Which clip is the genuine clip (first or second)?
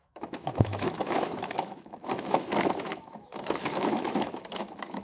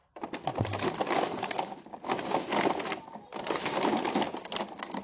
second